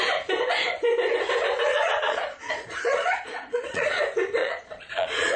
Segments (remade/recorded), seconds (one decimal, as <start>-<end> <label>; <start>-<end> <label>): 0.0-1.7 recorded; 1.7-4.0 remade; 4.0-4.4 recorded; 4.4-5.4 remade